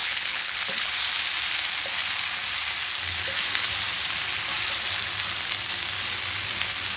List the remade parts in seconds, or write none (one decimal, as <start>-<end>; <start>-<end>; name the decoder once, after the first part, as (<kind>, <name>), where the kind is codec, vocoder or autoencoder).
0.0-0.9 (codec, HILCodec)